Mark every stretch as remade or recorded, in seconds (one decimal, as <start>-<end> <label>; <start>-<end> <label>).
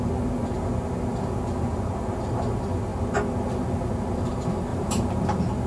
0.0-4.7 recorded; 4.7-5.2 remade; 5.2-5.7 recorded